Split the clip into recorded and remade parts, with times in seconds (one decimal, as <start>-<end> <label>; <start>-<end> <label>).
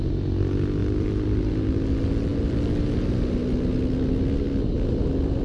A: 0.0-0.8 recorded; 0.8-1.5 remade; 1.5-2.3 recorded; 2.3-2.9 remade; 2.9-5.4 recorded